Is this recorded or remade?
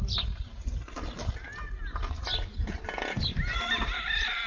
recorded